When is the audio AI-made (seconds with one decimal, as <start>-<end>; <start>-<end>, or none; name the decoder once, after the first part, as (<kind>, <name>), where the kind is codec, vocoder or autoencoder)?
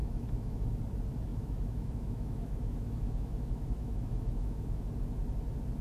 0.0-0.6 (autoencoder, DAC-VAE); 1.3-4.8